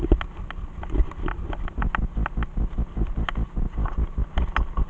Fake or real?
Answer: real